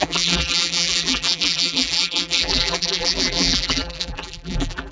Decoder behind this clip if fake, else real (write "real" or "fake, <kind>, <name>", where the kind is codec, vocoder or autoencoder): fake, vocoder, BigVGAN v2